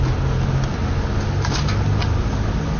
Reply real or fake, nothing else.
real